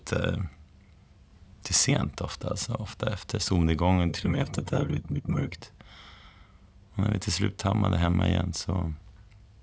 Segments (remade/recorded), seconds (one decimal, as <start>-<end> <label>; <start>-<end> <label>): 0.0-4.1 recorded; 4.1-5.6 remade; 5.6-9.6 recorded